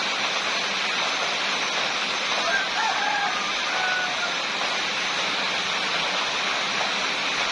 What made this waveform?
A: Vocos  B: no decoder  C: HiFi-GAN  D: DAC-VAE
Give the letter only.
B